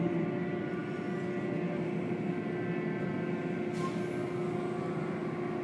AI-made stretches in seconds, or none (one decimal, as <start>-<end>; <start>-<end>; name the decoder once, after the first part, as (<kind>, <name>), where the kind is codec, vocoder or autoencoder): none